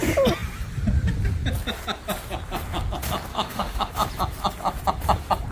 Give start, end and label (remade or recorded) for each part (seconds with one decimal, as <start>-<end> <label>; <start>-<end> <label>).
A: 0.0-3.3 recorded; 3.3-3.9 remade; 3.9-5.5 recorded